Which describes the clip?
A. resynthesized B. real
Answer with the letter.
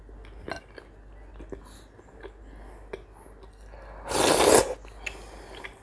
B